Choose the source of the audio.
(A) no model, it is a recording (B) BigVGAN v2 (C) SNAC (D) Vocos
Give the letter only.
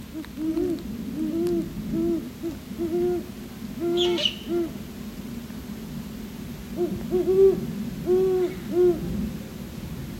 A